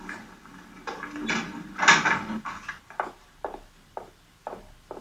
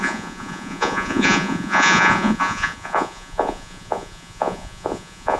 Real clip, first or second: first